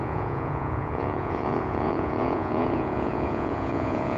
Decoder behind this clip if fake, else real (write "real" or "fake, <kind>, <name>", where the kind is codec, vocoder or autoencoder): fake, vocoder, Vocos